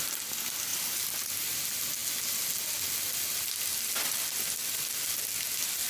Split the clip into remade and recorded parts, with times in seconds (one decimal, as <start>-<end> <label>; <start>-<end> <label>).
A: 0.0-5.9 recorded